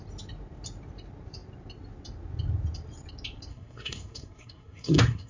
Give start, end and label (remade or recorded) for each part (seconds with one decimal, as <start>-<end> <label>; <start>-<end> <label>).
0.0-3.5 recorded; 3.5-5.3 remade